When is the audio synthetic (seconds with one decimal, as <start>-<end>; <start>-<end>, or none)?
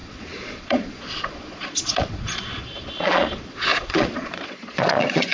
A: 0.0-5.3